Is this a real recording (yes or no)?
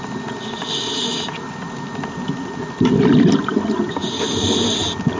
yes